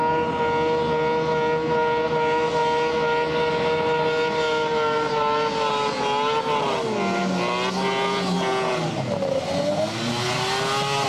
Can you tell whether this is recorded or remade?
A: recorded